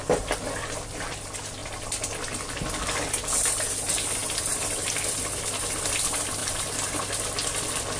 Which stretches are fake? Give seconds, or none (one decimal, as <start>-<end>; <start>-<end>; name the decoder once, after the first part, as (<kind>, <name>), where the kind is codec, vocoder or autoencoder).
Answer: 6.4-6.9 (vocoder, BigVGAN v2)